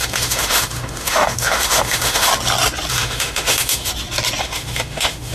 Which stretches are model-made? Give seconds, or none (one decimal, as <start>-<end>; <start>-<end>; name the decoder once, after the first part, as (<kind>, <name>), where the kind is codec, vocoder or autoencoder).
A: 0.0-2.3 (autoencoder, DAC-VAE); 2.9-3.9; 4.4-5.3